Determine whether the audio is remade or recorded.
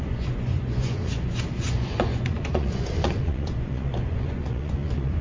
remade